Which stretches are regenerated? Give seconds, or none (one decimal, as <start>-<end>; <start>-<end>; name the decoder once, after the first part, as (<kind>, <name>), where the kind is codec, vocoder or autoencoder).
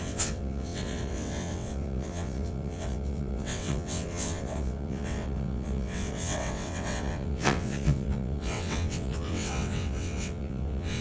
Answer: 0.0-11.0 (vocoder, WaveNeXt)